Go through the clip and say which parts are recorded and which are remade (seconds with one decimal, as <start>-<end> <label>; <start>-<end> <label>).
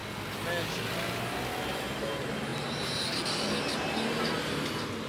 0.0-5.1 recorded